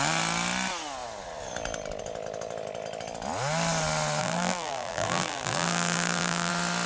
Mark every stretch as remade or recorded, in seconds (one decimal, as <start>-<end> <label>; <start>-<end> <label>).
0.0-4.2 recorded; 4.2-6.5 remade; 6.5-6.9 recorded